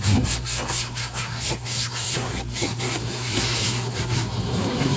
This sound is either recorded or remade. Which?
remade